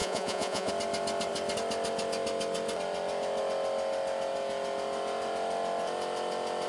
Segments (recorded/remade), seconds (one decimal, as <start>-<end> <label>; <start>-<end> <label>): 0.0-0.7 remade; 0.7-6.7 recorded